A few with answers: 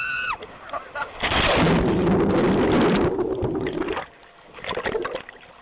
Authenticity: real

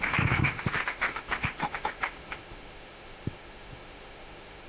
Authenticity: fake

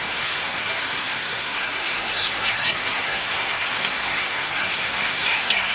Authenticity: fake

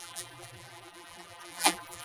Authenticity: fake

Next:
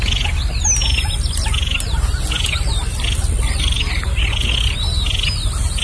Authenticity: real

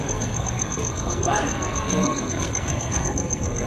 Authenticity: fake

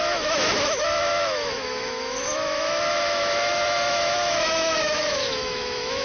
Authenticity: fake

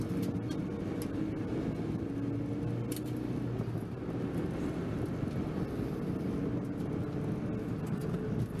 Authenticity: real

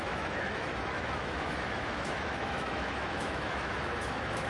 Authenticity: fake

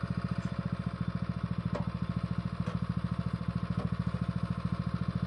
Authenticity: real